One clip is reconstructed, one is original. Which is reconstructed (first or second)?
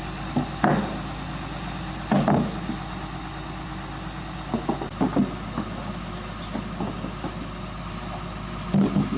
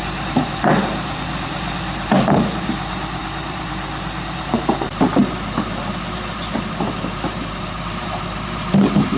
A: second